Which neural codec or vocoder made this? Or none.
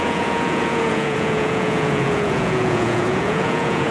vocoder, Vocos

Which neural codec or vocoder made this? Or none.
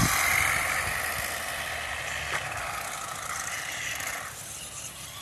none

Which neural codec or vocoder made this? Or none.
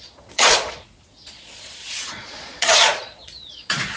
vocoder, Vocos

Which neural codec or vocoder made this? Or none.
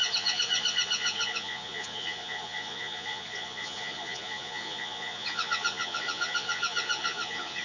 vocoder, Vocos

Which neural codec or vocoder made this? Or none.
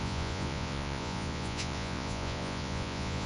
vocoder, Vocos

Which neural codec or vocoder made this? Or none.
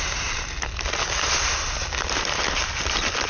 none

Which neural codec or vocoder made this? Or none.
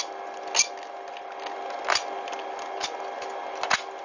none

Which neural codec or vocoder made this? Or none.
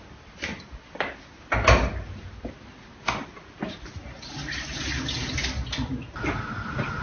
none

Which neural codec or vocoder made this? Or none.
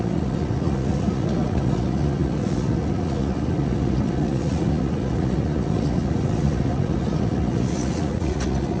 vocoder, Vocos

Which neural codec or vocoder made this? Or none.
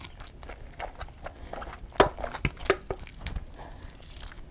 none